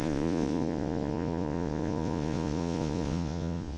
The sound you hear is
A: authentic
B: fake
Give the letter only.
B